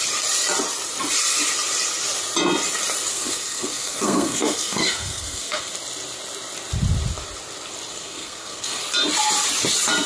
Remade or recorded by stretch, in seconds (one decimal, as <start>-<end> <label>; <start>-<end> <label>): 0.0-3.1 recorded; 3.1-5.7 remade; 5.7-7.9 recorded; 7.9-8.8 remade; 8.8-10.1 recorded